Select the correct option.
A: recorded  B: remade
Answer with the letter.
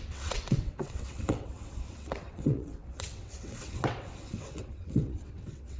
B